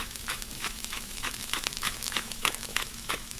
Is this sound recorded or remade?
remade